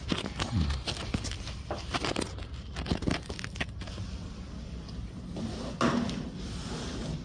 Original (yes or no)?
yes